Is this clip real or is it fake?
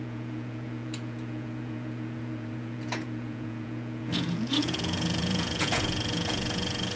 fake